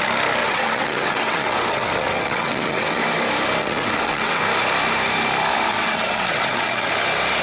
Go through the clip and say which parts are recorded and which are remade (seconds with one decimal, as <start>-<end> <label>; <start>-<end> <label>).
0.0-0.4 recorded; 0.4-3.0 remade; 3.0-3.6 recorded; 3.6-4.4 remade; 4.4-5.7 recorded; 5.7-6.9 remade; 6.9-7.4 recorded

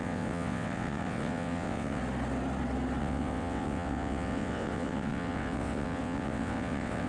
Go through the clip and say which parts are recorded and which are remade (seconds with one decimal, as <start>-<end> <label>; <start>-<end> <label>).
0.0-2.0 remade; 2.0-3.0 recorded; 3.0-7.1 remade